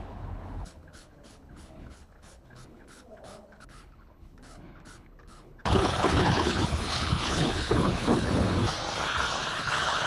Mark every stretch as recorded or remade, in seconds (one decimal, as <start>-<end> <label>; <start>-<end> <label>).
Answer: 0.0-8.6 remade; 8.6-9.6 recorded; 9.6-10.1 remade